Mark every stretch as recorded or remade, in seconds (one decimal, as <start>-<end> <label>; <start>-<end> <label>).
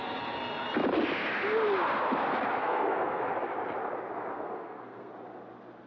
0.0-2.6 recorded; 2.6-3.2 remade; 3.2-4.3 recorded; 4.3-5.1 remade; 5.1-5.9 recorded